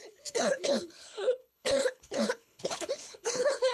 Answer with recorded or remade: remade